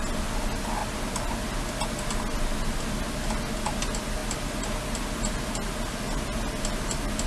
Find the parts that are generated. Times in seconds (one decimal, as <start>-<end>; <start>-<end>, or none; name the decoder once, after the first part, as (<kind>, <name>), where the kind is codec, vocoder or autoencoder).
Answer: none